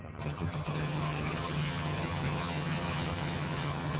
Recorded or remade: remade